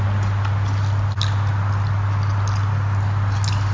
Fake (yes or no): no